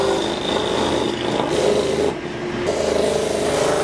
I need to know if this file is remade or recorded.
recorded